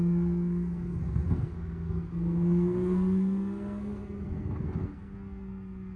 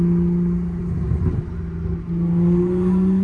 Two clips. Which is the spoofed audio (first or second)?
first